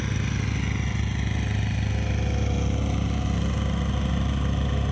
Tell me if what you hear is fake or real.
real